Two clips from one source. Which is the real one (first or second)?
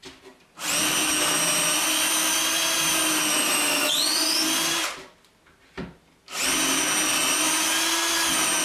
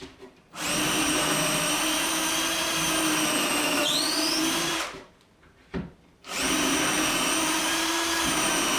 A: first